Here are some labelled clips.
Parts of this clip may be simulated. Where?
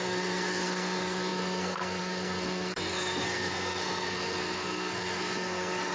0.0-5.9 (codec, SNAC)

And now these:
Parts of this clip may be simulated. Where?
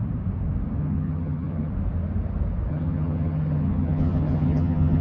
0.8-1.7 (vocoder, HiFi-GAN); 2.7-5.0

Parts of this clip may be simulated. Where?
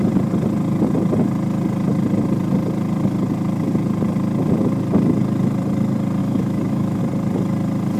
6.2-7.0 (autoencoder, DAC-VAE)